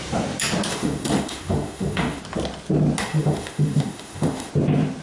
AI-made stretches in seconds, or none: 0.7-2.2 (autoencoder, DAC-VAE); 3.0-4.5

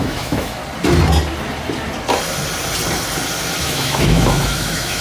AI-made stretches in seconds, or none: 0.0-0.6 (autoencoder, DAC-VAE); 3.6-5.0

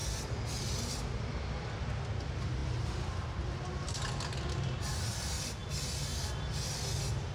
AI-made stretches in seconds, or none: none

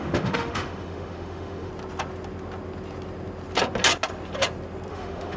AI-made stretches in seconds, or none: 0.0-1.7 (autoencoder, DAC-VAE); 4.9-5.4

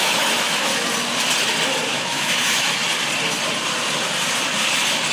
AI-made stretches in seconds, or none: 0.0-0.7 (autoencoder, DAC-VAE); 1.9-2.8